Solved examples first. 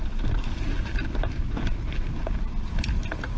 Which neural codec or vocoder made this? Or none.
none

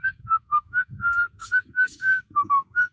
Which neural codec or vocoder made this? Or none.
codec, SNAC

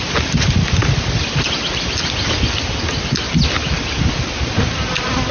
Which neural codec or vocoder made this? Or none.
none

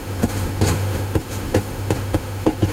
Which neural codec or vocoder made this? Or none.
autoencoder, DAC-VAE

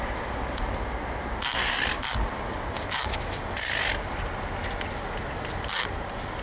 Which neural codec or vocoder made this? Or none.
none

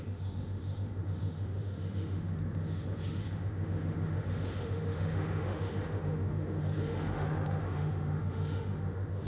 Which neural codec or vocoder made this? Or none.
autoencoder, DAC-VAE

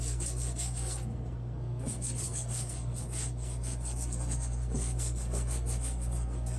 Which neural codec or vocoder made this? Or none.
codec, SNAC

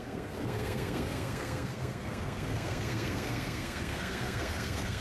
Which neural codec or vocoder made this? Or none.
codec, SNAC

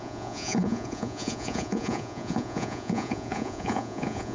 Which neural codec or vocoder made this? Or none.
vocoder, Vocos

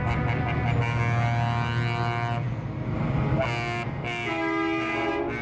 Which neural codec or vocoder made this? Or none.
none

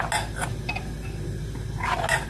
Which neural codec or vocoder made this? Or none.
none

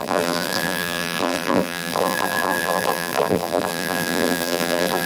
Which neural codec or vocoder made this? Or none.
vocoder, BigVGAN v2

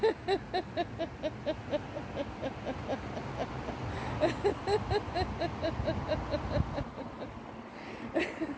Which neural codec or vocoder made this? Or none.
none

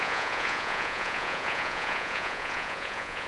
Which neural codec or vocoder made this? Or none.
vocoder, Vocos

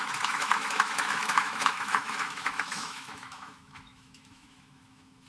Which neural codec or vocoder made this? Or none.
autoencoder, DAC-VAE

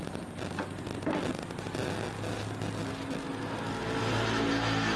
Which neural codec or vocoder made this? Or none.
none